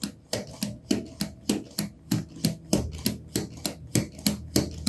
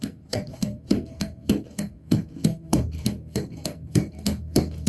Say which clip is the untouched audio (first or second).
first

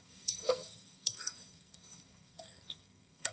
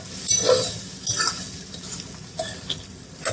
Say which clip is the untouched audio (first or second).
second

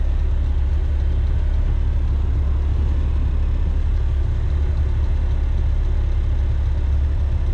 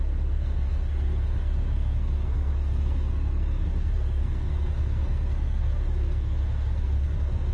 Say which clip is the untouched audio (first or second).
first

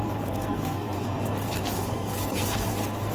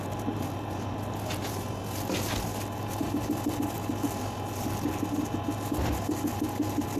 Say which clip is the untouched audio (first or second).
second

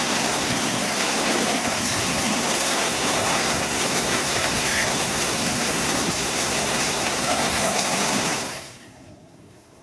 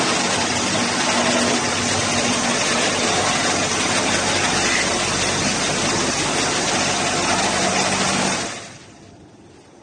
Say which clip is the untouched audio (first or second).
second